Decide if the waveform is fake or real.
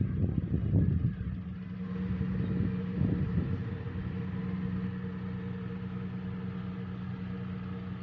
real